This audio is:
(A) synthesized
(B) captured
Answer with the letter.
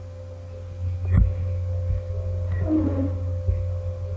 B